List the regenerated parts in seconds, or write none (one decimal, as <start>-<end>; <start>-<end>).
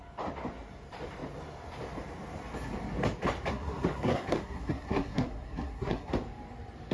3.5-6.1